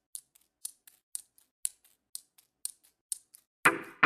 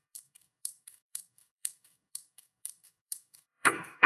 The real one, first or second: first